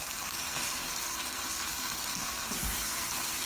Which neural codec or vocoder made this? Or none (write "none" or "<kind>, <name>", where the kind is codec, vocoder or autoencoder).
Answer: codec, SNAC